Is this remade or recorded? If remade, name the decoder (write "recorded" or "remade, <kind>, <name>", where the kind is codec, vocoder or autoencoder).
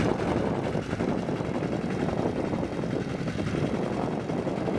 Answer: recorded